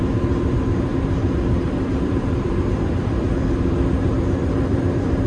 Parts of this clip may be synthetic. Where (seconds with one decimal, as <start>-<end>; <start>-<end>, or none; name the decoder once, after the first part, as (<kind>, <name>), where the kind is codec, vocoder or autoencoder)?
0.0-5.3 (vocoder, BigVGAN v2)